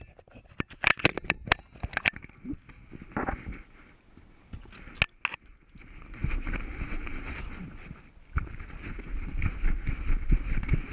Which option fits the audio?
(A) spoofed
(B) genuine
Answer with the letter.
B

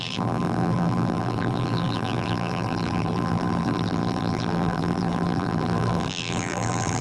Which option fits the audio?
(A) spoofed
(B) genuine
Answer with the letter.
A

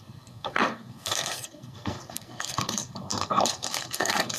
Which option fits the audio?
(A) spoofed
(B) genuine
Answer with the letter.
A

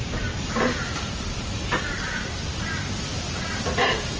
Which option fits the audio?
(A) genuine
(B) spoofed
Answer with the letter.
B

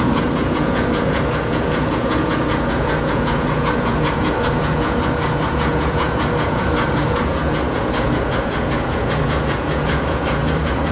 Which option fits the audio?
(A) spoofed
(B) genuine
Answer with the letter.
A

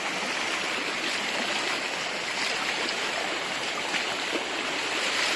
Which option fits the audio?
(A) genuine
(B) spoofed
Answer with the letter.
A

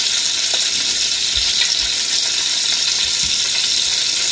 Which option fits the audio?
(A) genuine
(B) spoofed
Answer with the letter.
A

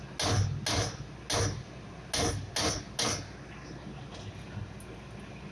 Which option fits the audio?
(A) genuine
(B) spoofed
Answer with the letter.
A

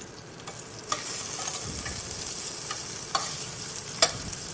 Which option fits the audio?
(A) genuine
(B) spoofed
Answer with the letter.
A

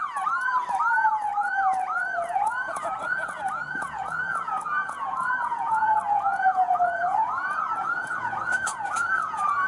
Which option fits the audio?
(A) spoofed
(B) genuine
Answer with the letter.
A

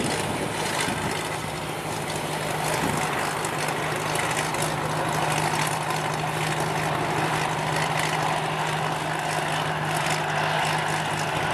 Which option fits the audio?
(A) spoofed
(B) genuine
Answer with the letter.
B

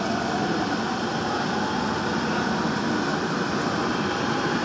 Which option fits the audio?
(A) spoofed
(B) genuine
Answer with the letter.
B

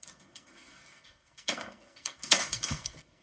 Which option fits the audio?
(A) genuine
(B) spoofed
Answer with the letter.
B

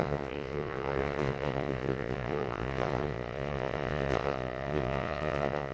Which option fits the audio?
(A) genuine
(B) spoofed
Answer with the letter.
B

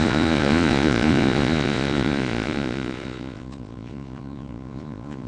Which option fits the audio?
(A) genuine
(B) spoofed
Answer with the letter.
B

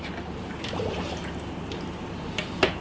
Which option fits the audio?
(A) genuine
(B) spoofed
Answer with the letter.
A